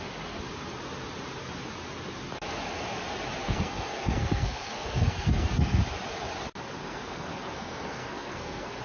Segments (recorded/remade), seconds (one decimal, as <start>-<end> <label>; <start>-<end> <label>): 0.0-3.4 recorded; 3.4-5.8 remade; 5.8-6.8 recorded; 6.8-8.8 remade